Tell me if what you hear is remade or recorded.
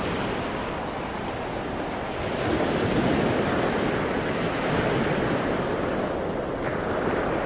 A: recorded